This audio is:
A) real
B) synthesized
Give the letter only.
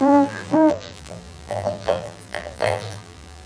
B